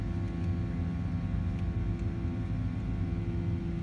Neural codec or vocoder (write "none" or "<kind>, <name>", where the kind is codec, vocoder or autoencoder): none